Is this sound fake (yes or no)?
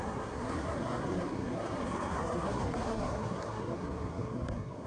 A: yes